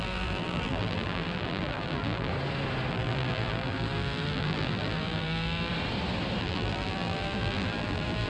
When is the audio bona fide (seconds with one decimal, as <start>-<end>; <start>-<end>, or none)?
2.3-2.9; 5.7-6.4